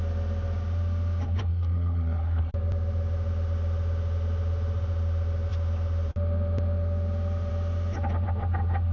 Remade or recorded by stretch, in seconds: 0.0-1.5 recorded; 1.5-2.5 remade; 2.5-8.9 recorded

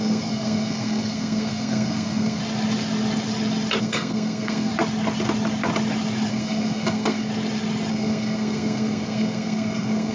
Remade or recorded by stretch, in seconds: 0.0-2.4 remade; 2.4-3.8 recorded; 3.8-4.7 remade; 4.7-6.3 recorded; 6.3-7.3 remade; 7.3-7.9 recorded; 7.9-10.1 remade